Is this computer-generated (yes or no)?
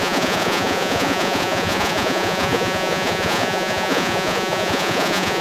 yes